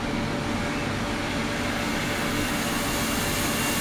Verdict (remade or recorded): recorded